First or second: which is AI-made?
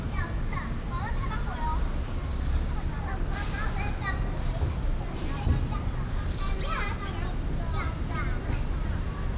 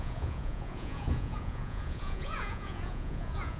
second